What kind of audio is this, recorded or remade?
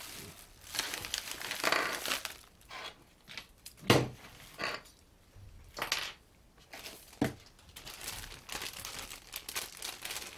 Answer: recorded